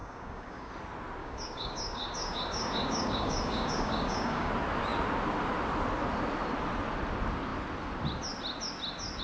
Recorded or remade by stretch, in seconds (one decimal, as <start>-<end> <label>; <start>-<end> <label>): 0.0-0.7 remade; 0.7-1.2 recorded; 1.2-4.5 remade; 4.5-9.2 recorded